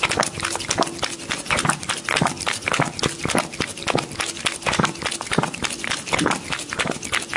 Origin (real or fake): real